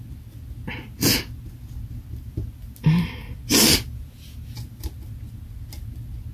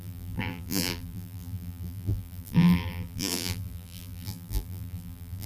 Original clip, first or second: first